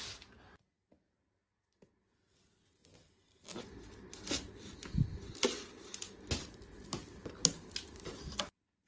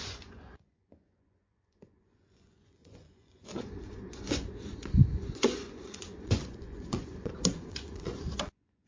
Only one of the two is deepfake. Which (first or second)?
second